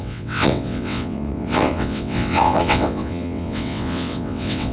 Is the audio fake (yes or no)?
yes